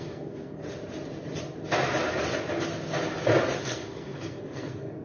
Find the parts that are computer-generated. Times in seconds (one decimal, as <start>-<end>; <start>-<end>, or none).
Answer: 0.0-0.6; 3.6-5.0